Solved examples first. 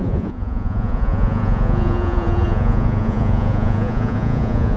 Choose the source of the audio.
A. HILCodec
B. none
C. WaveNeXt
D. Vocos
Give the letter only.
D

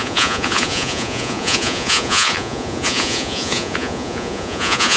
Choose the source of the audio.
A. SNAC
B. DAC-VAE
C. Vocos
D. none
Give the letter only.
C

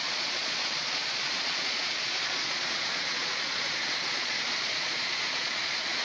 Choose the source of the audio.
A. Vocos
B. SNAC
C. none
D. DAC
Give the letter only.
A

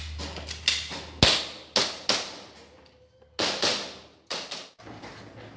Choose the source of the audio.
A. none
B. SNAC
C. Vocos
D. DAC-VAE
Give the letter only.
A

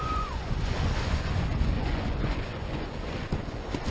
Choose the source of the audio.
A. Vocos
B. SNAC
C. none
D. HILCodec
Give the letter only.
A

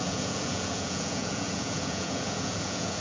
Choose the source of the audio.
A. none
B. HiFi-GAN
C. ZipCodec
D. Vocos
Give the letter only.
D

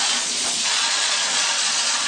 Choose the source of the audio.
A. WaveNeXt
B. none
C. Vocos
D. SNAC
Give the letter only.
C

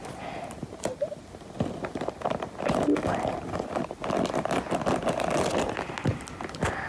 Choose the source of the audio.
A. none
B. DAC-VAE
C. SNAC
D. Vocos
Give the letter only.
A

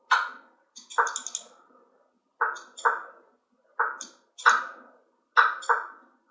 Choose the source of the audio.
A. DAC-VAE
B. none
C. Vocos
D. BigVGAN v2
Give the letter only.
B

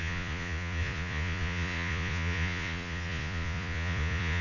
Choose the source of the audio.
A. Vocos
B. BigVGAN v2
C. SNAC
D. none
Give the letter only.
A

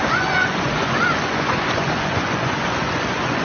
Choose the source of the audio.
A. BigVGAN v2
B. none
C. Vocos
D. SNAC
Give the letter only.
C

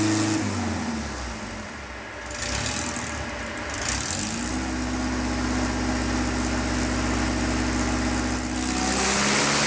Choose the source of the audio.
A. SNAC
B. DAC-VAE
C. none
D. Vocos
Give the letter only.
C